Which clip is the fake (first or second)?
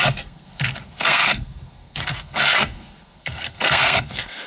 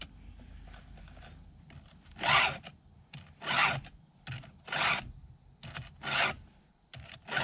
first